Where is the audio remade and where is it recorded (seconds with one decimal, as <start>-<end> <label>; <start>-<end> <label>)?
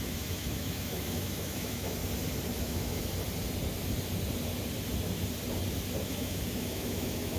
0.0-2.0 remade; 2.0-2.6 recorded; 2.6-3.0 remade; 3.0-6.0 recorded; 6.0-7.4 remade